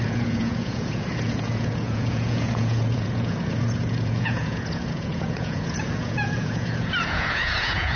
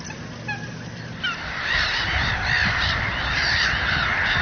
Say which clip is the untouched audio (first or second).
second